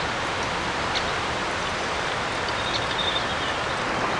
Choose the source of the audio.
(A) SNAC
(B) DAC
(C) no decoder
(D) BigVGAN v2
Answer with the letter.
C